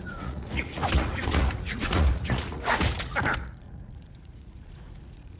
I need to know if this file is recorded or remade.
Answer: remade